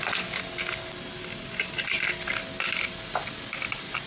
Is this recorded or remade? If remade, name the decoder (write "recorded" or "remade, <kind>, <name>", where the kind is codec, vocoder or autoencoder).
recorded